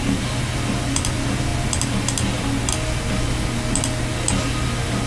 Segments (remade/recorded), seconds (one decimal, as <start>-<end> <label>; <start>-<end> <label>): 0.0-5.1 recorded